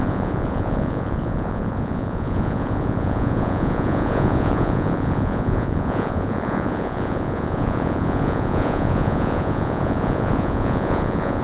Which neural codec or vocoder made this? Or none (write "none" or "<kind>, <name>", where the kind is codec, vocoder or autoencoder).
vocoder, Vocos